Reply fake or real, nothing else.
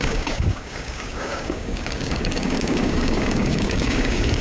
fake